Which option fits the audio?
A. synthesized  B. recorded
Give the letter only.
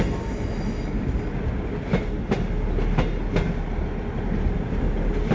B